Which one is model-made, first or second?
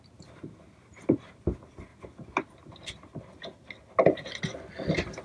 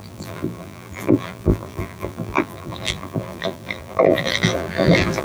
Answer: second